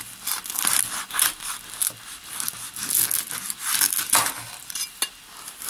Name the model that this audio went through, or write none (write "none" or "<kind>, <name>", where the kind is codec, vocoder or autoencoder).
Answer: none